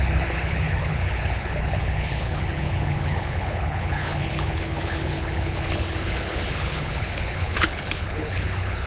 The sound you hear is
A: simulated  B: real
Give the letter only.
A